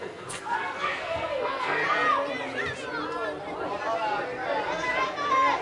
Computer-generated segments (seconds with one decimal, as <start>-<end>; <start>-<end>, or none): 0.0-1.8